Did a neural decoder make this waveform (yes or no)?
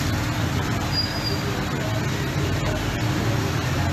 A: no